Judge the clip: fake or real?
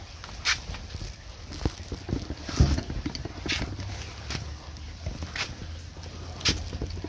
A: real